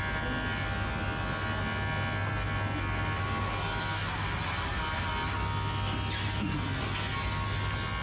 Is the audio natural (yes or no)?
yes